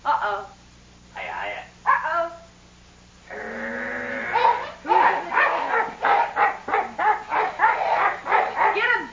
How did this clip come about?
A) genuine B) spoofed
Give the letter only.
A